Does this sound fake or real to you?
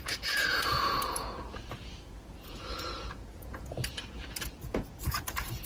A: fake